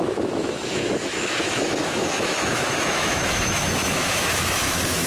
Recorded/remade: remade